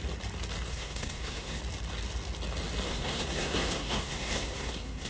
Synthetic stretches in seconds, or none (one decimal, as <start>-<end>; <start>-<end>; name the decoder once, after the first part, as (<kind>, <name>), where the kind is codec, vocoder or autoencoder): 0.7-1.6 (codec, SNAC); 2.9-5.1